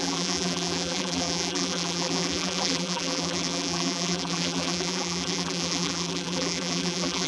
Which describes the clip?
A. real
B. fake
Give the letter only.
B